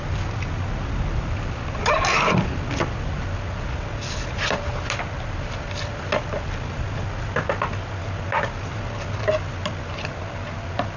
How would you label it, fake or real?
real